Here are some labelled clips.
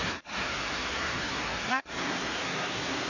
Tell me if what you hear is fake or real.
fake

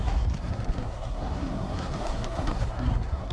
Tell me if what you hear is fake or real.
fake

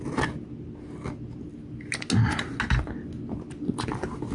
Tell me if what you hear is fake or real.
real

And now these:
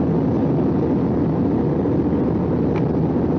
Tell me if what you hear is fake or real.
real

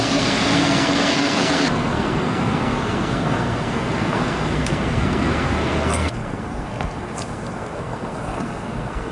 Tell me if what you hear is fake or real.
fake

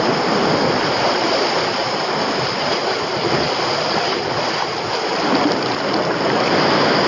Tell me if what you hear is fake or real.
real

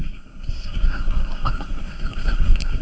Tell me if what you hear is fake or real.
fake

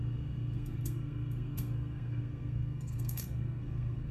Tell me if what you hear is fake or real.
fake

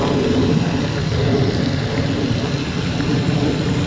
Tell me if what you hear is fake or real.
real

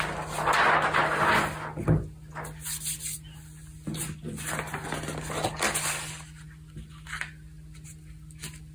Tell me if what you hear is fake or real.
real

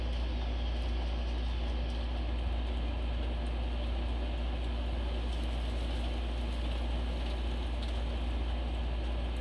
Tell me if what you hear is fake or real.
real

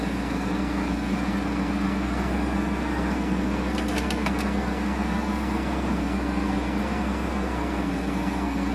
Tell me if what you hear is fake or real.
fake